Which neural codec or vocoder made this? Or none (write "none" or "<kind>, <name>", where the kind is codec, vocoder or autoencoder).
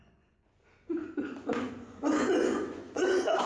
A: vocoder, Vocos